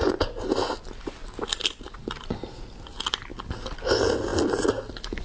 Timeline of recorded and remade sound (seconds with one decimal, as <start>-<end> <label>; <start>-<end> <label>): 0.0-5.2 recorded